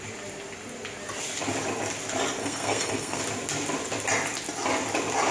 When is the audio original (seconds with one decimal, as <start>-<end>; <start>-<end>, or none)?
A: 0.0-2.4; 3.2-5.3